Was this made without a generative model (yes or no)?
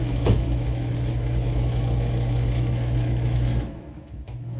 no